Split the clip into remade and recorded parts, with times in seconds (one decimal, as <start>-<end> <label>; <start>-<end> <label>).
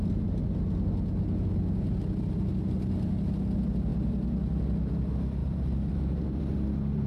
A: 0.0-5.4 recorded; 5.4-6.4 remade; 6.4-7.1 recorded